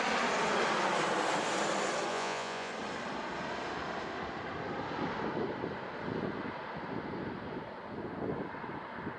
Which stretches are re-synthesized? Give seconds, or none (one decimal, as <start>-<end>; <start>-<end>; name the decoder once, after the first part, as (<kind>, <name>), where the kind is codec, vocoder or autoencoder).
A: 2.1-2.7 (vocoder, Vocos)